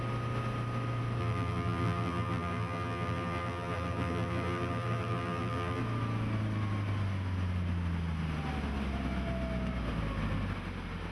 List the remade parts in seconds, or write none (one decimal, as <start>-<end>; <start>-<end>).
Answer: 1.2-5.8